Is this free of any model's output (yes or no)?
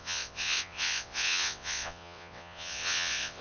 no